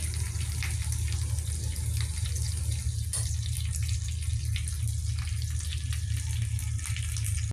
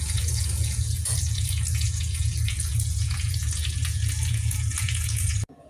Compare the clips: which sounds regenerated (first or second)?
second